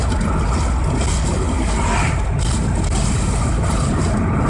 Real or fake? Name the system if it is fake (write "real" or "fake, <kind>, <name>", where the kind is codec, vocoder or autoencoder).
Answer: real